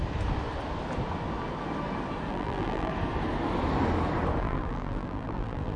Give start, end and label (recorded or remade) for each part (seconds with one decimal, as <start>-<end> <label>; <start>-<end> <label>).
0.0-2.3 recorded; 2.3-2.9 remade; 2.9-4.4 recorded; 4.4-5.8 remade